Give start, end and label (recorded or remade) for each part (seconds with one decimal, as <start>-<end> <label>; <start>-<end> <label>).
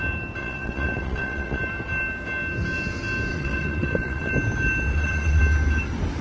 0.0-0.4 recorded; 0.4-1.6 remade; 1.6-3.3 recorded; 3.3-4.3 remade; 4.3-4.9 recorded; 4.9-5.4 remade; 5.4-6.2 recorded